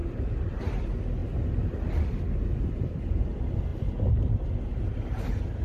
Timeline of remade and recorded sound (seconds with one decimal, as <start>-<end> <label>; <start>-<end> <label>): 0.0-0.6 remade; 0.6-5.6 recorded